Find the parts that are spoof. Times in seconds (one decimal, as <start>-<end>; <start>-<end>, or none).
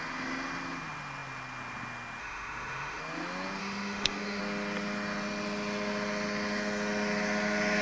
2.2-3.0; 3.6-4.4